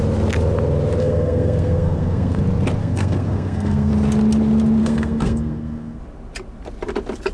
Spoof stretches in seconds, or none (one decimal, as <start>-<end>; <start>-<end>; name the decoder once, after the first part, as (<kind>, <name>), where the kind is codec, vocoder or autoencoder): 1.0-2.4 (codec, SNAC); 2.8-3.9; 4.8-6.0